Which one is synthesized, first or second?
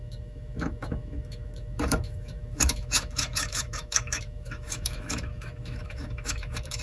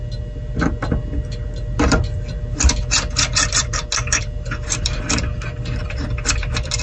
first